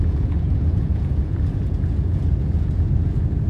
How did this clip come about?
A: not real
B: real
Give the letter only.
A